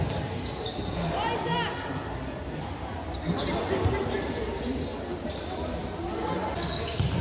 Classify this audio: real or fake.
real